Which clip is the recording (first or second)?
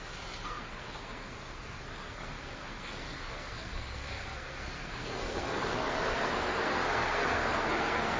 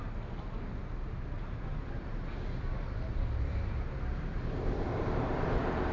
second